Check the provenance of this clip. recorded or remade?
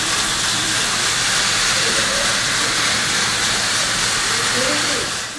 recorded